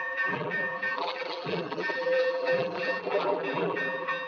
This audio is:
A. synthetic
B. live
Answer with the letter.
A